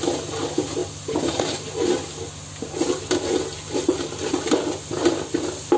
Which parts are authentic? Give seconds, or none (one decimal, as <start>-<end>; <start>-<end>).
0.0-5.8